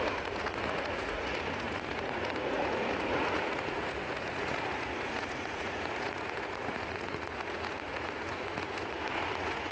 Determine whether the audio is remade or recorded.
remade